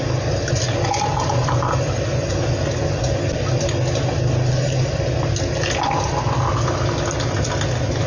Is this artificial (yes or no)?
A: no